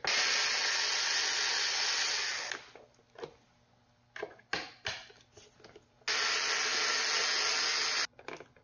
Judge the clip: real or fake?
real